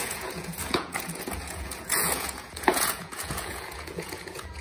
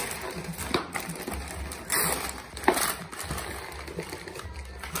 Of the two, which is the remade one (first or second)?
first